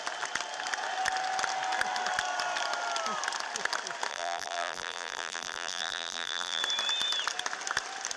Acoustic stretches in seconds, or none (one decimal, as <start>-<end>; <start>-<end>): 0.0-4.1; 6.6-8.2